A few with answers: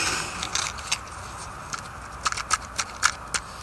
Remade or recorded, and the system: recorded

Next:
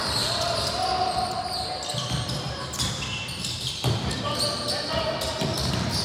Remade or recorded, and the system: recorded